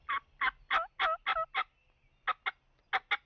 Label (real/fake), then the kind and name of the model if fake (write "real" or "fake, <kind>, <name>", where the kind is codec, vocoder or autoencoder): real